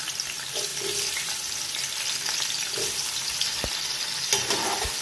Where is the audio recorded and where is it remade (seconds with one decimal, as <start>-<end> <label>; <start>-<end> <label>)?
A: 0.0-5.0 recorded